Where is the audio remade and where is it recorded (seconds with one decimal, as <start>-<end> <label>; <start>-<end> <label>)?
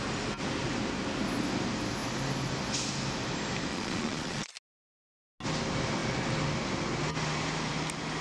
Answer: 0.0-3.7 recorded; 3.7-4.5 remade; 4.5-8.2 recorded